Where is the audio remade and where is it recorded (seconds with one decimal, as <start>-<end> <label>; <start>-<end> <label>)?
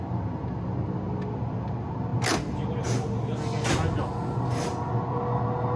0.0-5.8 recorded